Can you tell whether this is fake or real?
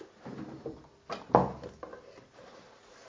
real